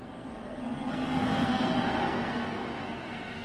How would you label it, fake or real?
fake